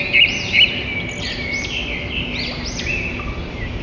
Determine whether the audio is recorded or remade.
recorded